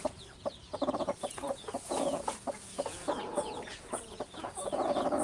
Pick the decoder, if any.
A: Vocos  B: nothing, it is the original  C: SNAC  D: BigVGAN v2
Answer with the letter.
A